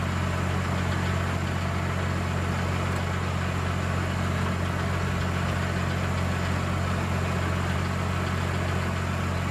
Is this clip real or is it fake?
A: real